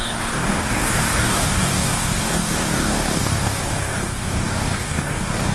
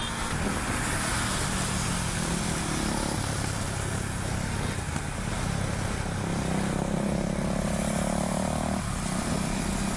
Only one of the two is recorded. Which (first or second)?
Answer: second